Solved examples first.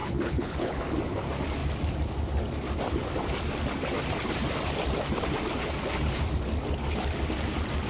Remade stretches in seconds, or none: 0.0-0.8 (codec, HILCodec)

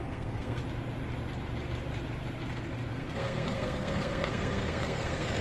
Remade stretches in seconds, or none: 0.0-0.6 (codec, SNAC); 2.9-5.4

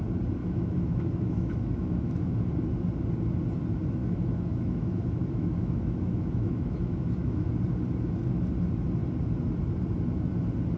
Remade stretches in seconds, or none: 0.4-2.5 (autoencoder, DAC-VAE); 4.0-7.5

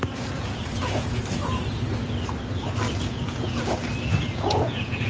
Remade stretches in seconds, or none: 0.0-1.2 (vocoder, Vocos); 3.1-3.8; 4.5-5.1